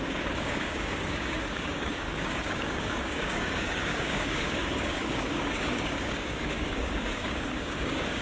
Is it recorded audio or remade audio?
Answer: remade